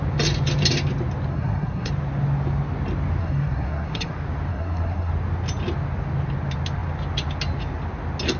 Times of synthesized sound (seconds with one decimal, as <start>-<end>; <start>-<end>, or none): 1.3-1.9; 3.2-4.1; 4.5-5.1